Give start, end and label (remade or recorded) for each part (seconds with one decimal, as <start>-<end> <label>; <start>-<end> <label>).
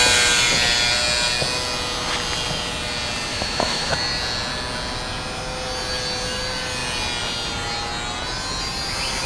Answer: 0.0-3.3 recorded; 3.3-3.9 remade; 3.9-9.3 recorded